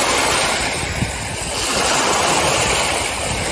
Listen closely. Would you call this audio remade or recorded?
recorded